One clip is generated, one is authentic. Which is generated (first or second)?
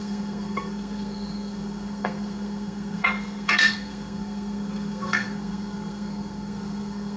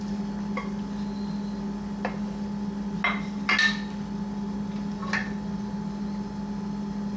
first